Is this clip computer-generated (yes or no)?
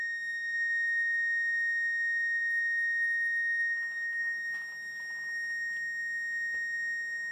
no